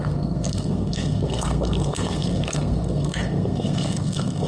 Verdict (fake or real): fake